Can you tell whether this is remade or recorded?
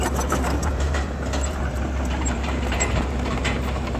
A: remade